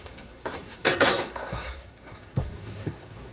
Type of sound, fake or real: fake